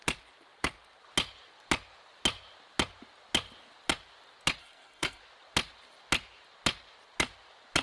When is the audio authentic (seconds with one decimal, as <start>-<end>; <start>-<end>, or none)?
0.0-4.6; 5.2-7.8